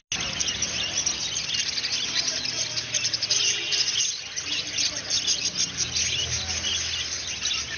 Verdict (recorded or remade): recorded